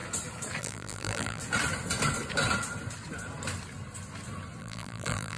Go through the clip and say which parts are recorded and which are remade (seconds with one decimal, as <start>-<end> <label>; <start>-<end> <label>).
0.0-0.6 recorded; 0.6-1.4 remade; 1.4-4.6 recorded; 4.6-5.4 remade